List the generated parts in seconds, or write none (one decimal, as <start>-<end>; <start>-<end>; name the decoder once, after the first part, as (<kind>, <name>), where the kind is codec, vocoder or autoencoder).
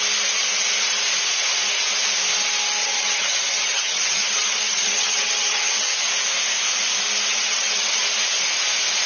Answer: 2.8-6.1 (vocoder, HiFi-GAN); 7.3-8.0